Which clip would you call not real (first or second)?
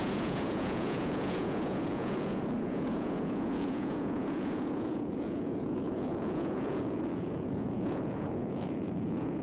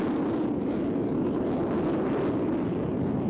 first